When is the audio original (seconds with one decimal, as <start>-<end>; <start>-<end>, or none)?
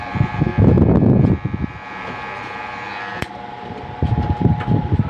0.5-1.3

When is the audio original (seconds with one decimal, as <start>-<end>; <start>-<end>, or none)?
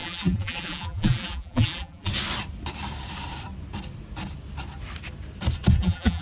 2.1-5.8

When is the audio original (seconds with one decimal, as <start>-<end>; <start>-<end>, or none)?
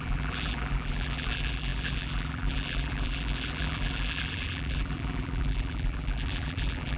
none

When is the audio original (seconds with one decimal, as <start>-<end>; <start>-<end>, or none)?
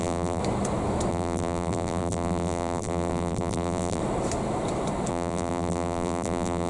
0.4-1.1; 4.0-5.1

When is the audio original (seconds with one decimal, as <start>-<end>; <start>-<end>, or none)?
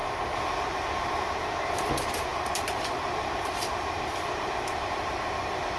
1.9-2.3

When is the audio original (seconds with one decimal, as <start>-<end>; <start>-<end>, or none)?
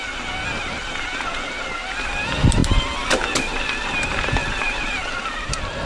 0.0-5.9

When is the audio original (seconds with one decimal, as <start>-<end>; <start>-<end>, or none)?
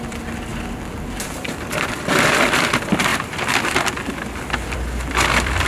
0.0-0.5; 2.7-3.1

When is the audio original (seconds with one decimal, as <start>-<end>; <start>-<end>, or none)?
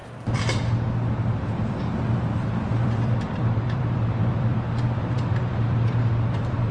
0.6-2.7